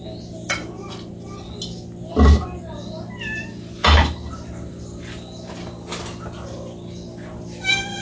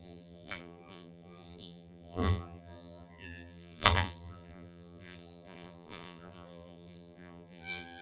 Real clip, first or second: first